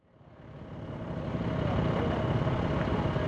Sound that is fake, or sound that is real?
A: real